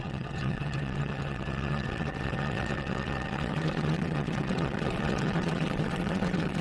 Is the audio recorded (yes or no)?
no